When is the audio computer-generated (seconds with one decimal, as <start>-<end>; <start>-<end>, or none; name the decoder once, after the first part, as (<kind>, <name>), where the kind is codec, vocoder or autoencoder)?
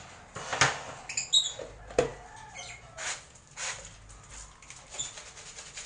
none